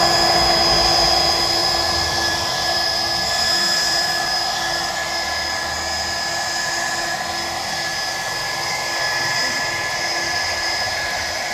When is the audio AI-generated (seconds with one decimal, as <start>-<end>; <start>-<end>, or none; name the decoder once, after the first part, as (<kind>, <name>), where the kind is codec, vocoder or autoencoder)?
1.6-4.9 (vocoder, BigVGAN v2)